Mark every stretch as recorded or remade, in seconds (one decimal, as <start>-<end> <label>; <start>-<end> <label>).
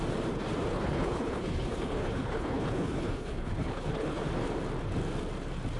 0.0-0.7 recorded; 0.7-4.2 remade; 4.2-5.8 recorded